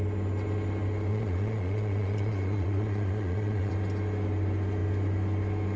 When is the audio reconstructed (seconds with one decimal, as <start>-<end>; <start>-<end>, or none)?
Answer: 1.1-3.7